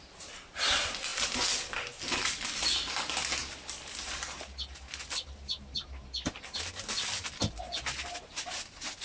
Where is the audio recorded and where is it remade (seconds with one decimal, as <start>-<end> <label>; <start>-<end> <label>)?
0.0-9.0 recorded